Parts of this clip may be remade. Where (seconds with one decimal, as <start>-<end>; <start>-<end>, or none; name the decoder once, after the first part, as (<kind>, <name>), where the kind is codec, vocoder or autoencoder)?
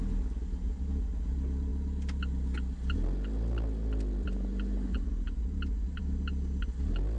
none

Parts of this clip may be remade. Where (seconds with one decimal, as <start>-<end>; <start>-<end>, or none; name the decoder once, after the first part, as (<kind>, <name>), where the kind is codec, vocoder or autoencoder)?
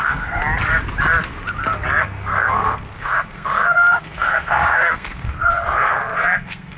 0.0-0.4 (codec, SNAC); 2.0-6.8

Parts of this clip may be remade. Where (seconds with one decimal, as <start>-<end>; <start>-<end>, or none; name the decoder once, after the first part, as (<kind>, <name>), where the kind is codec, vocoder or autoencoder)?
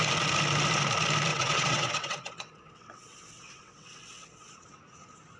1.3-4.5 (vocoder, WaveNeXt)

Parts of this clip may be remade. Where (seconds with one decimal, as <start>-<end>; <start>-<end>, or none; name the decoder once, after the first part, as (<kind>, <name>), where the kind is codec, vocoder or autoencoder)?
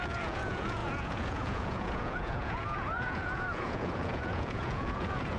0.0-5.4 (vocoder, Vocos)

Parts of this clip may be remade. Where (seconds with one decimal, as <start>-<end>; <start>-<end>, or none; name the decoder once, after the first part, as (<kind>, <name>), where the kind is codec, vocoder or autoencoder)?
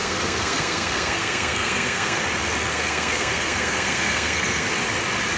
0.0-2.2 (codec, SNAC); 2.7-4.7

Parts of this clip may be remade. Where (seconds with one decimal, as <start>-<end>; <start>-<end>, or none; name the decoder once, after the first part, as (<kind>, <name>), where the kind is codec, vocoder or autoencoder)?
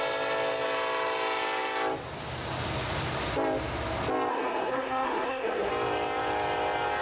4.3-5.7 (codec, SNAC)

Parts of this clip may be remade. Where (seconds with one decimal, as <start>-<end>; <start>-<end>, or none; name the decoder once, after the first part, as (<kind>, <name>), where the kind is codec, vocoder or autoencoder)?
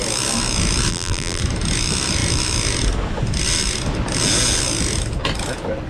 0.9-1.4 (vocoder, BigVGAN v2)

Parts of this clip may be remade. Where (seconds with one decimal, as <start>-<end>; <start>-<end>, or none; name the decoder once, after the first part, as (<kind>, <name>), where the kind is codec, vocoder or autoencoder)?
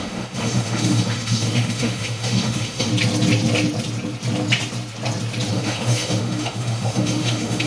0.0-2.9 (autoencoder, DAC-VAE); 5.5-7.7